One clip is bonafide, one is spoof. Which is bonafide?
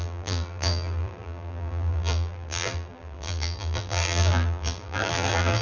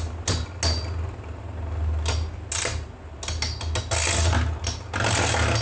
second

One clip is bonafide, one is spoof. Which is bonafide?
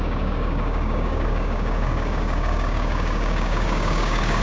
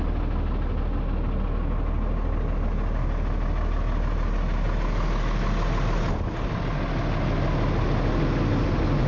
second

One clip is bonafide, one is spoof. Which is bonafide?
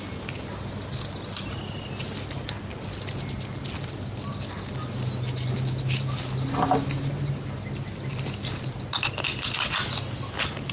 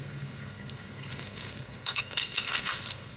first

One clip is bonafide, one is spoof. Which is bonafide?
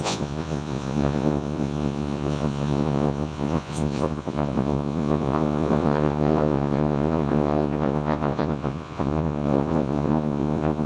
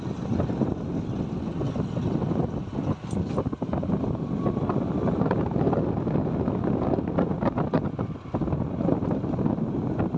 second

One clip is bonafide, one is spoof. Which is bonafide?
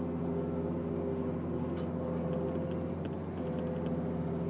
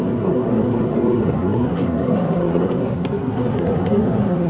first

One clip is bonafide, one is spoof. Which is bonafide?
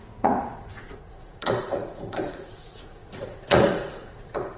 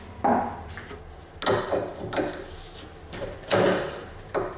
second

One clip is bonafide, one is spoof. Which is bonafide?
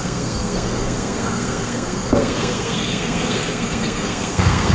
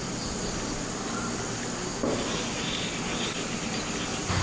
second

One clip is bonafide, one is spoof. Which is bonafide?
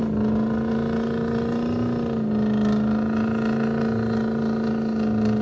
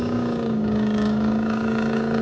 first